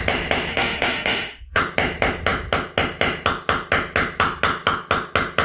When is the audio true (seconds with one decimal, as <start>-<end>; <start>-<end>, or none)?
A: 0.0-0.5; 1.6-5.4